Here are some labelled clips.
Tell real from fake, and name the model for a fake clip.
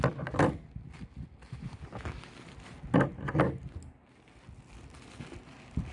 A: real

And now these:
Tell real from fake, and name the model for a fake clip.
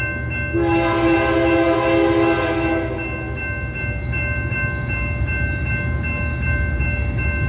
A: real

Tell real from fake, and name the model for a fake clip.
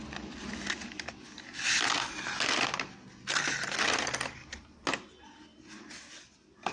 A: real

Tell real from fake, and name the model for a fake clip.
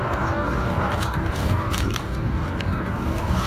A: fake, codec, DAC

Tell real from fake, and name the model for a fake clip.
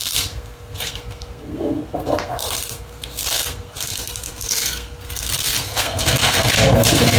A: fake, codec, SNAC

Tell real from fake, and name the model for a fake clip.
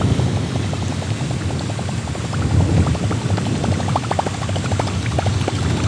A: real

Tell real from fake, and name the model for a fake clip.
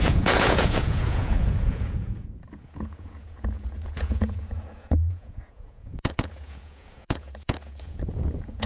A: fake, vocoder, Vocos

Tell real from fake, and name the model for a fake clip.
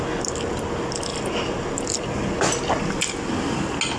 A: real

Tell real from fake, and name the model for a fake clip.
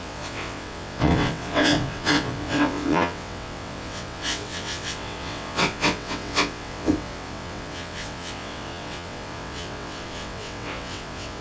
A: fake, vocoder, WaveNeXt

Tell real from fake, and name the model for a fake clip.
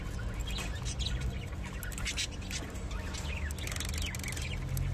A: real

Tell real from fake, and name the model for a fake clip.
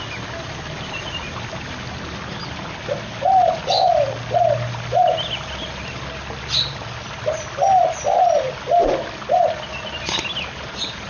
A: real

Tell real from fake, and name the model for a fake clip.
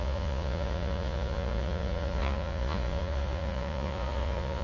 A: fake, vocoder, Vocos